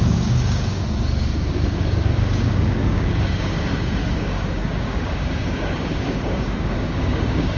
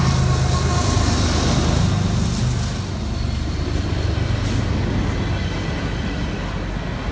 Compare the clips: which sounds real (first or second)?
second